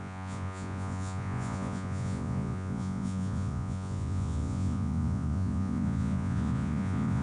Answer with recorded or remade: remade